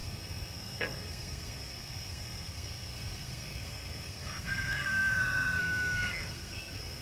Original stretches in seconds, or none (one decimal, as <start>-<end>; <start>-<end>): none